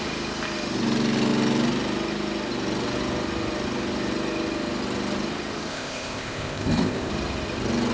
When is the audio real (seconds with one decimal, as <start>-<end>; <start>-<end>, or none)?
0.0-5.7; 7.1-7.9